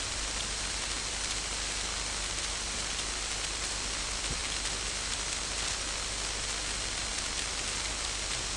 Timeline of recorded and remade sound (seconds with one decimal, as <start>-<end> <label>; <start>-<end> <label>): 0.0-8.6 recorded